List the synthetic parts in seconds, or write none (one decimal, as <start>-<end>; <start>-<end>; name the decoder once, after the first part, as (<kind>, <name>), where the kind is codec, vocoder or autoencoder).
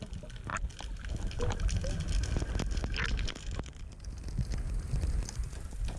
none